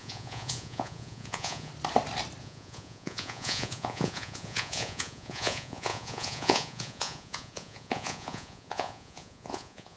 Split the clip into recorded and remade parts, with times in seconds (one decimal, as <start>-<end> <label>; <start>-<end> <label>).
0.0-1.7 remade; 1.7-2.4 recorded; 2.4-10.0 remade